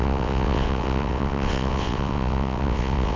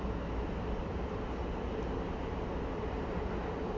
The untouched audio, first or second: second